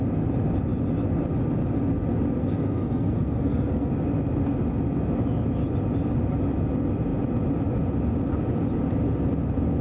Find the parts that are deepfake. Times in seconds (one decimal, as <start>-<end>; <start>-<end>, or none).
2.4-3.9